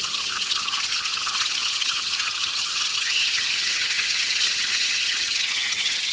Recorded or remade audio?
remade